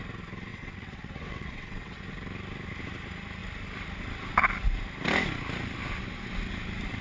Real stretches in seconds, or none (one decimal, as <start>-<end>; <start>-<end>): 0.0-0.5; 2.0-7.0